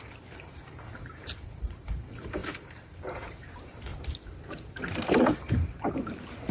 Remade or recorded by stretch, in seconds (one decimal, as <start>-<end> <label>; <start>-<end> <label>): 0.0-3.9 remade; 3.9-5.1 recorded; 5.1-6.5 remade